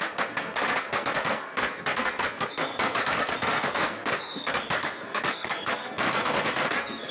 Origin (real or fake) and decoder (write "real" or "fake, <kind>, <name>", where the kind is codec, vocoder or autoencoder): fake, codec, SNAC